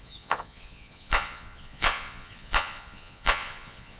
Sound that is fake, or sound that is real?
fake